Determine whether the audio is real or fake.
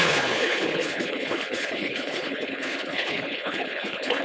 fake